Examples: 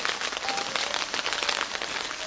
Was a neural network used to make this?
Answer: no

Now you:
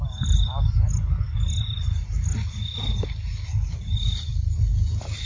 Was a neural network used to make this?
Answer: no